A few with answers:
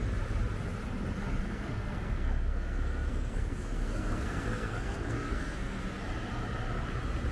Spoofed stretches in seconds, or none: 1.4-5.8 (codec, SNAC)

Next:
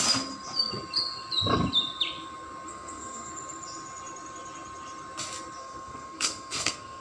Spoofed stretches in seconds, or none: 2.7-3.3 (codec, SNAC); 5.6-7.0

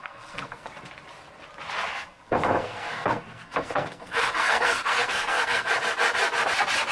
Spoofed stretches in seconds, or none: 0.0-0.7 (codec, SNAC); 1.9-5.7

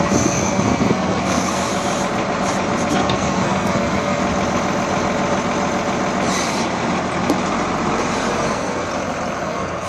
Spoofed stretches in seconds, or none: 0.0-1.7 (codec, SNAC); 2.9-4.2; 8.5-8.9; 9.4-9.9